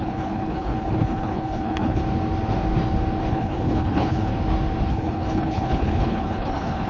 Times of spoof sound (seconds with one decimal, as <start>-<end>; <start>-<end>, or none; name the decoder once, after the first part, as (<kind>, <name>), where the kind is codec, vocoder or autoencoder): 0.0-2.0 (codec, HILCodec); 3.3-4.3; 4.9-6.9